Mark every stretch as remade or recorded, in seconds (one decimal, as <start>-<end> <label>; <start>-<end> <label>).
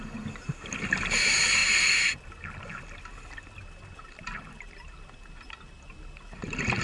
0.0-6.8 recorded